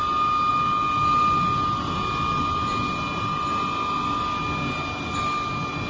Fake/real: real